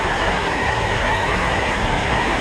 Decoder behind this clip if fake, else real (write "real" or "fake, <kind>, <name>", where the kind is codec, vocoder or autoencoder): fake, codec, SNAC